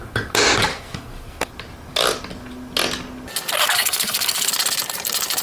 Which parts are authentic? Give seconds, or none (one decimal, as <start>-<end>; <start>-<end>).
0.0-0.7; 1.5-3.6; 4.5-5.4